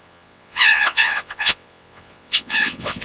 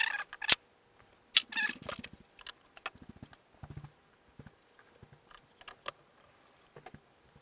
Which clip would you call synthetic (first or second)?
first